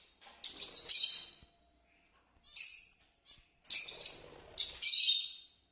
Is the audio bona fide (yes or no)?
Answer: yes